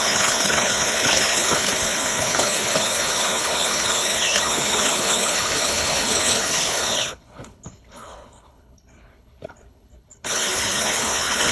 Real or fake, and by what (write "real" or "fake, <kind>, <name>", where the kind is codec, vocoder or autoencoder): fake, codec, HILCodec